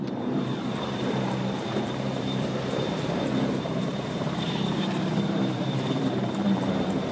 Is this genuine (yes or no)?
no